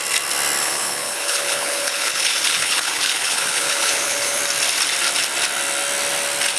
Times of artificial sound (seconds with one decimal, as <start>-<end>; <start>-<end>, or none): 0.6-4.4